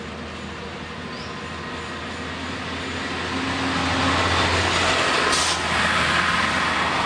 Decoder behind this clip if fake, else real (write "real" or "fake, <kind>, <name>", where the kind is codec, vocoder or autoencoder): real